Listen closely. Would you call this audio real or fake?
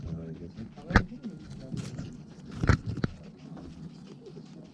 real